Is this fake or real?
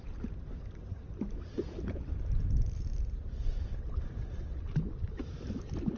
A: real